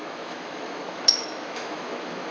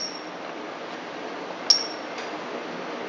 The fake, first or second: first